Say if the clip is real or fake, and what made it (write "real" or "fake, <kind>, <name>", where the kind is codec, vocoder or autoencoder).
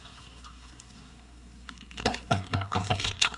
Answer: fake, codec, SNAC